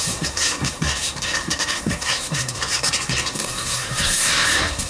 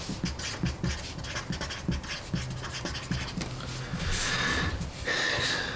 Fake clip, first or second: first